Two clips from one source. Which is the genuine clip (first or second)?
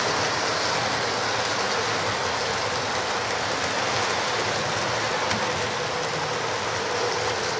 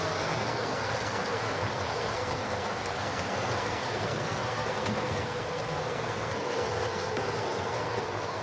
first